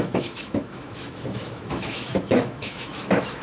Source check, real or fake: fake